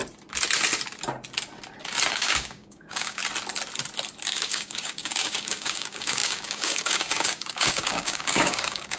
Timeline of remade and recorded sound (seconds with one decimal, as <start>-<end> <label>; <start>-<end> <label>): 0.0-2.1 recorded; 2.1-3.2 remade; 3.2-4.2 recorded; 4.2-9.0 remade